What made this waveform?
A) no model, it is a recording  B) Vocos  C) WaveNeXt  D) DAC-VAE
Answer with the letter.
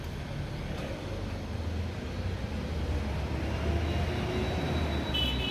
A